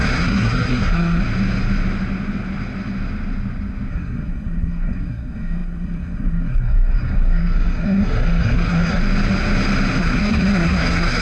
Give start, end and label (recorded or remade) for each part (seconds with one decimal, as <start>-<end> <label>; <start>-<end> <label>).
0.0-1.2 remade; 1.2-3.9 recorded; 3.9-9.0 remade; 9.0-10.0 recorded; 10.0-11.2 remade